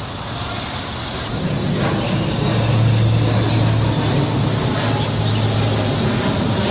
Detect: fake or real real